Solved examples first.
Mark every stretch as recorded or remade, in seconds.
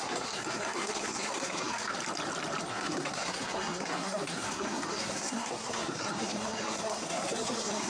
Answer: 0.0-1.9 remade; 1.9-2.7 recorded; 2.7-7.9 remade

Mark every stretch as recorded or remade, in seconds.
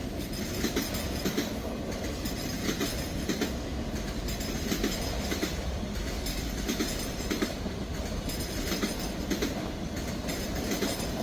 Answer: 0.0-11.2 recorded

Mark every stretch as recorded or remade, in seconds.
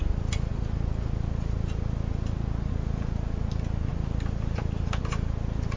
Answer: 0.0-5.8 recorded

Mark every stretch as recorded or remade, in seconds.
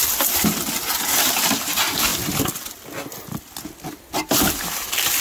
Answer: 0.0-5.2 recorded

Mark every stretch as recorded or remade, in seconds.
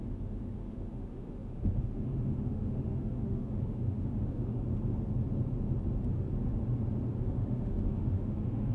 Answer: 0.0-4.6 remade; 4.6-7.2 recorded; 7.2-8.7 remade